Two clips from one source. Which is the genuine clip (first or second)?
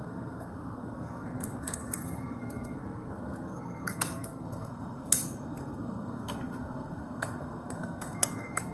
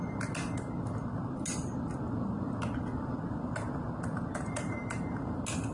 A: second